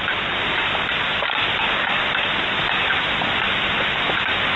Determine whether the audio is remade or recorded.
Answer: recorded